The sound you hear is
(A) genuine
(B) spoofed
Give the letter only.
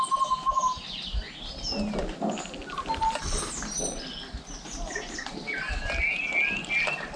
A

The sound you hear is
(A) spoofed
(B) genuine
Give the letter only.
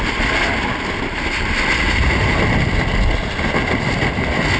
B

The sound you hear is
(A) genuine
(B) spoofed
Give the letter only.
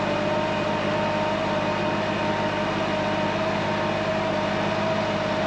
A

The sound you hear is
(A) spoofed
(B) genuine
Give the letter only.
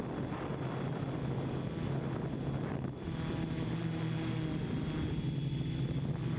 B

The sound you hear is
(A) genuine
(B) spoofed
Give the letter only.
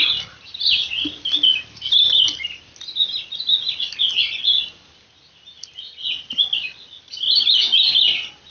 A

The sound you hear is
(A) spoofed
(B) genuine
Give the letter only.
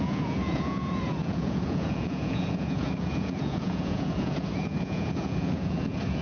A